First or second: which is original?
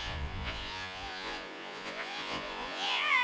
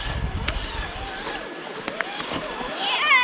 second